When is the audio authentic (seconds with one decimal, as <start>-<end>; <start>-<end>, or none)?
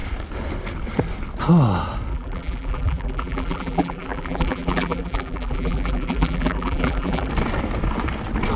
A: 0.0-2.1; 7.3-8.6